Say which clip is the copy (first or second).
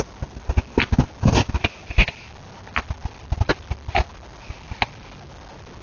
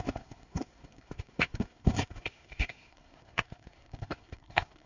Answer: second